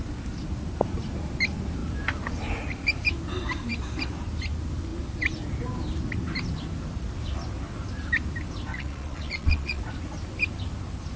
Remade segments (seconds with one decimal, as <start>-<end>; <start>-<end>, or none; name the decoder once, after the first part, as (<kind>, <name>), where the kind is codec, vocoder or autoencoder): 8.7-9.8 (vocoder, Vocos)

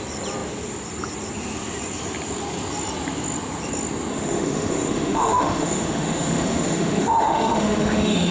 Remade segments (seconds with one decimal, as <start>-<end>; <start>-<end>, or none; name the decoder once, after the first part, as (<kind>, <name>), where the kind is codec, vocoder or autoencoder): 4.1-8.3 (autoencoder, DAC-VAE)

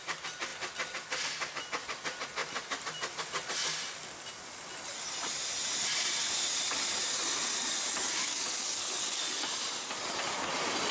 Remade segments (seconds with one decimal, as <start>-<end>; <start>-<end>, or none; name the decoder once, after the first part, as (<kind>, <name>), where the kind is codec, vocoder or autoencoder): 8.2-9.2 (codec, DAC)